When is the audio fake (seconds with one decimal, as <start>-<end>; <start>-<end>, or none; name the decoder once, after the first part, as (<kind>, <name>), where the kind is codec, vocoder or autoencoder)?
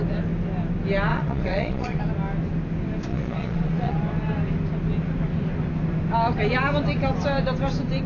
1.1-2.0 (vocoder, Vocos); 3.1-4.0